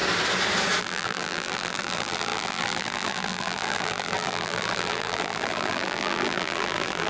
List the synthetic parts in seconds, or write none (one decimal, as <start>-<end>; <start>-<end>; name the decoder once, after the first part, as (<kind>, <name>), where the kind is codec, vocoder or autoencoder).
0.8-7.1 (vocoder, BigVGAN v2)